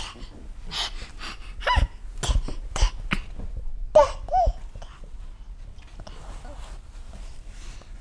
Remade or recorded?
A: recorded